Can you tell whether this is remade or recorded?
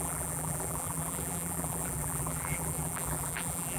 remade